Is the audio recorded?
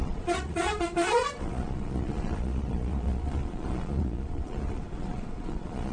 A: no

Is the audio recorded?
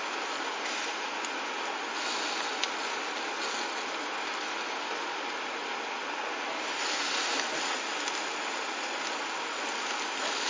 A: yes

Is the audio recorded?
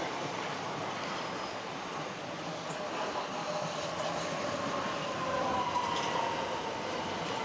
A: yes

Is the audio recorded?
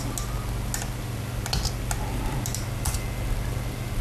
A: yes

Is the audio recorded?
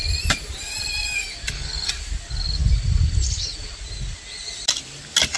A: yes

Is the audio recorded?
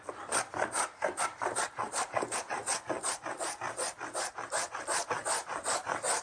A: yes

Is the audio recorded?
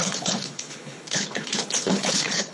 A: no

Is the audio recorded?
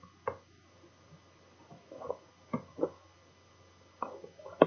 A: yes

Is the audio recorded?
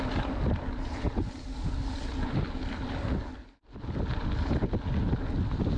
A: yes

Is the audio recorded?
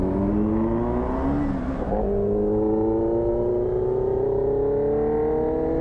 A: yes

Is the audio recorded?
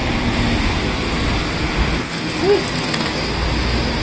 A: yes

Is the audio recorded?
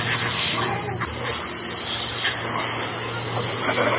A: yes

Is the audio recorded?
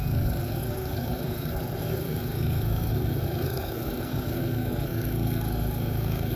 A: no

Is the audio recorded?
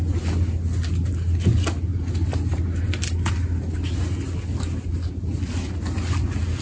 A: yes